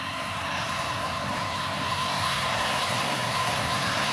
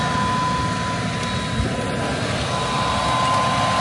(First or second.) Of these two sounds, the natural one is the second